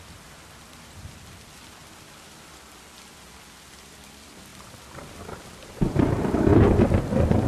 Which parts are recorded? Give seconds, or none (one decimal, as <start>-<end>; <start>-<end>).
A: 4.5-5.4; 6.5-7.5